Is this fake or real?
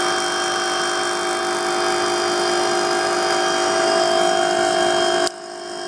real